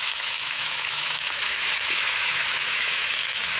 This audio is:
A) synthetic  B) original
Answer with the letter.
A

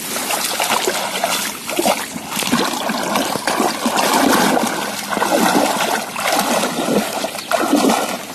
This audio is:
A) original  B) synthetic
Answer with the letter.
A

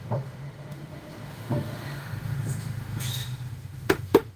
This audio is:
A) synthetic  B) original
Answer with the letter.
A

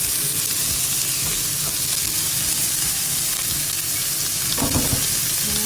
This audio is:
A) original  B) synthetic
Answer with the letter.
A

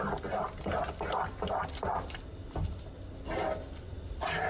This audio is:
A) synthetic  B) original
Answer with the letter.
B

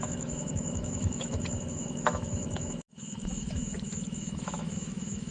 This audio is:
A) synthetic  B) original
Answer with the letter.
A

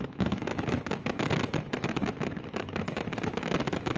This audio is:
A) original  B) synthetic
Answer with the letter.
B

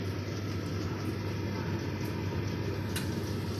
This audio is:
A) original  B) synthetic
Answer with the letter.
A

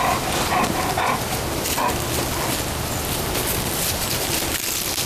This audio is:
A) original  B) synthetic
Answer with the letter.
A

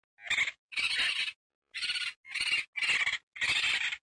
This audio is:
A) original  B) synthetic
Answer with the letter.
A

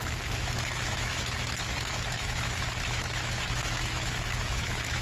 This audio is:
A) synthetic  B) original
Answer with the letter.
A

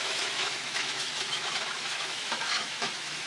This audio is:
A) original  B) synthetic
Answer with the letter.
B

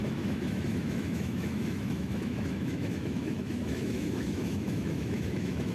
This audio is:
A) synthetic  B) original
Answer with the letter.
A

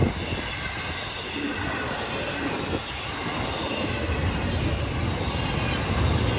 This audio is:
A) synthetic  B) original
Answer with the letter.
B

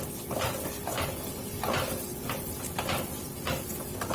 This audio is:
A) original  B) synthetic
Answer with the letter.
A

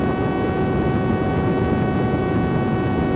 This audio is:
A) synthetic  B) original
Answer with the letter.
B